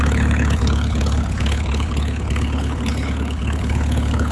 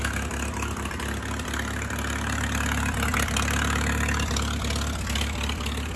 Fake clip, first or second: first